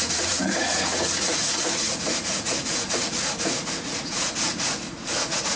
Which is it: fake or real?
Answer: fake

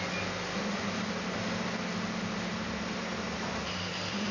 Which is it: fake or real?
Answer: real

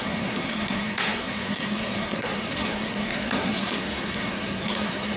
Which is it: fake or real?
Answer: fake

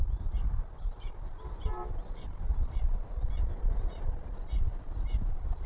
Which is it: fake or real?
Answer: real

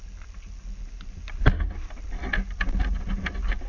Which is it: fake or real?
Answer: real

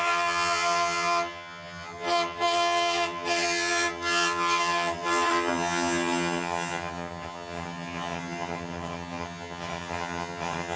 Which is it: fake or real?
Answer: fake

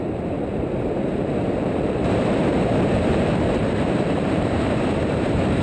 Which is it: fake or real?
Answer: fake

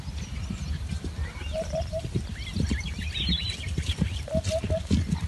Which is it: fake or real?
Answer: real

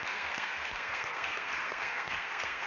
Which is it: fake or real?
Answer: fake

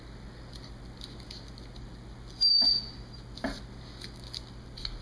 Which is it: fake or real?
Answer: real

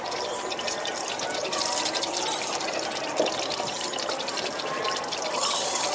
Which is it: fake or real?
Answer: fake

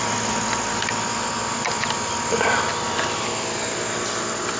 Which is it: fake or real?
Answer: real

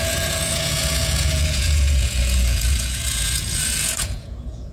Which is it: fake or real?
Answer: fake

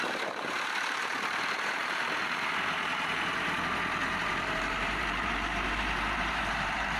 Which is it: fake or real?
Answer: fake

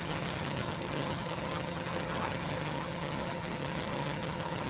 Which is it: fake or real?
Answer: fake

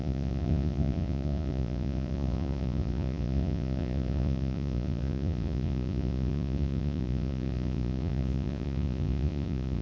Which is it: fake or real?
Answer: fake